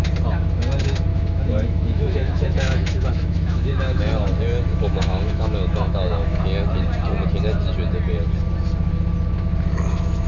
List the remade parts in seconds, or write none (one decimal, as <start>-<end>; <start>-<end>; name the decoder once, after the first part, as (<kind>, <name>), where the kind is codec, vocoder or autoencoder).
1.1-4.0 (autoencoder, DAC-VAE); 4.7-6.4

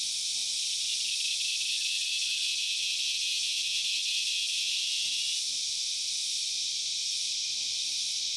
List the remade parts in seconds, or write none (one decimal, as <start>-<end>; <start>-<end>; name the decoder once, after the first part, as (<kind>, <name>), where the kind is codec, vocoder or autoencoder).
none

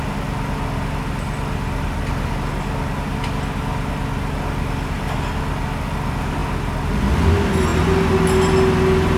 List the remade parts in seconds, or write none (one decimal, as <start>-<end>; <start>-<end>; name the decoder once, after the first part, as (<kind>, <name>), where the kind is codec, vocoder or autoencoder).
none

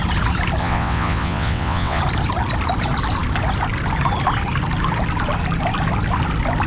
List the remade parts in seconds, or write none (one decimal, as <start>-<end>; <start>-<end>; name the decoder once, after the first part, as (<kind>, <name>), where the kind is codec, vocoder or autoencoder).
0.6-2.0 (vocoder, WaveNeXt)